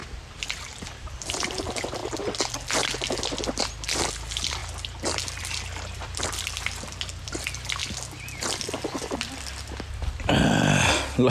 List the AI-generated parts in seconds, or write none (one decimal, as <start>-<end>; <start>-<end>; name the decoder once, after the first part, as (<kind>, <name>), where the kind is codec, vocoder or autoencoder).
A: 0.0-2.0 (vocoder, BigVGAN v2); 3.2-4.6; 5.4-7.8; 9.9-11.3